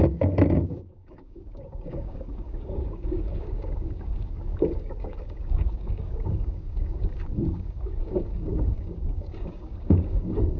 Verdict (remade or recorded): remade